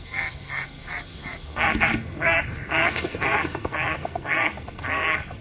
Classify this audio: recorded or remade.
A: remade